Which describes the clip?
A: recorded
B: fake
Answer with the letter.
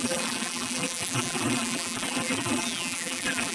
B